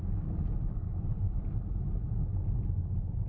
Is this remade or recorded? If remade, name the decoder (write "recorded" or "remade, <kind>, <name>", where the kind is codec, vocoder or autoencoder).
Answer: recorded